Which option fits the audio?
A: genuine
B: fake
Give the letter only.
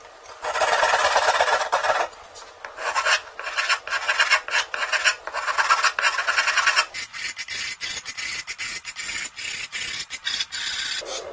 A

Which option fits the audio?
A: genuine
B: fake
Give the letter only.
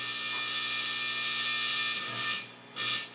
A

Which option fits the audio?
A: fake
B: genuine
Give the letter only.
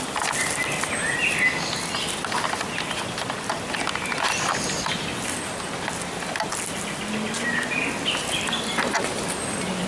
B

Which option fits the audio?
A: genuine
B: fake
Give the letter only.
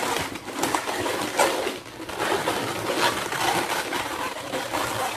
A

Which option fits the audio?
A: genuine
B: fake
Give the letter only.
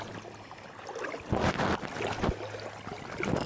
A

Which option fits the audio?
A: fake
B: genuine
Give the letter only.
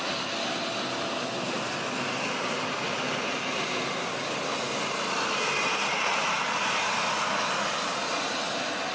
B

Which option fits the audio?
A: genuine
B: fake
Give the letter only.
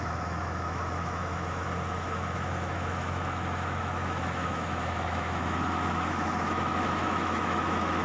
B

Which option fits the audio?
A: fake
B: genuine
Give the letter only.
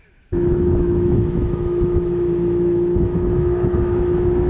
A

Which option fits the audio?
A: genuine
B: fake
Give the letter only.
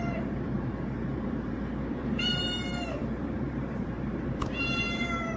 B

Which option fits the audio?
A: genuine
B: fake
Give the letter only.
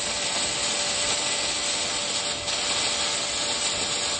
A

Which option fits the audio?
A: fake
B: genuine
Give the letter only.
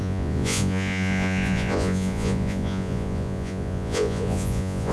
A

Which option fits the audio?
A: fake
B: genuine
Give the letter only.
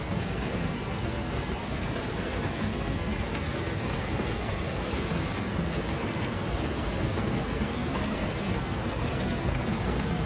A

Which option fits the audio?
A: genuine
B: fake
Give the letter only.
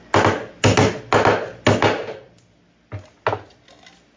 A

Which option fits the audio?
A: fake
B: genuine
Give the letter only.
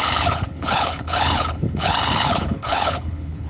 A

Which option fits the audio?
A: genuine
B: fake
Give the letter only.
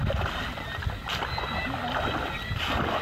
A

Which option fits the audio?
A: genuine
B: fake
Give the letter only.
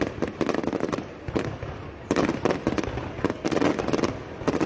A